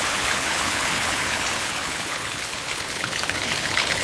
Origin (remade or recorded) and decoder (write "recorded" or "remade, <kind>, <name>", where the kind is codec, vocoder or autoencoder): remade, codec, HILCodec